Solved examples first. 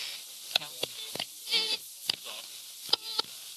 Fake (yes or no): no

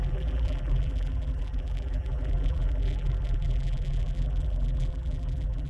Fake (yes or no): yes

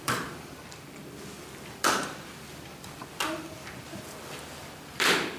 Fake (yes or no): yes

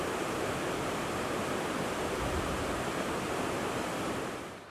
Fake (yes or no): yes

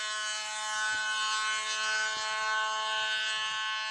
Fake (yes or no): no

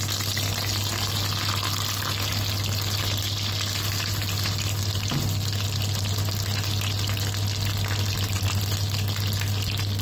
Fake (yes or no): no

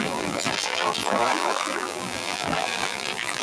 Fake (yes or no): yes